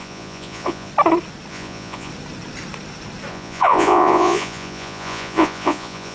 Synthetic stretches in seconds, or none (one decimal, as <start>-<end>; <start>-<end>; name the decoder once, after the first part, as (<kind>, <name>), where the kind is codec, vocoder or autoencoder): 0.0-0.9 (vocoder, Vocos); 1.5-2.1; 3.3-6.1